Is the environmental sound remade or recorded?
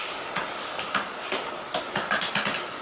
recorded